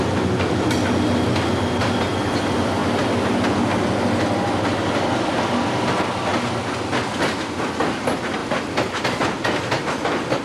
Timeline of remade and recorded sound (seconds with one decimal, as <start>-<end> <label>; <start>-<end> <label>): 0.0-10.4 recorded